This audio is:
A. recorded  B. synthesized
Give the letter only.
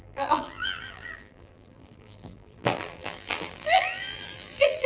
B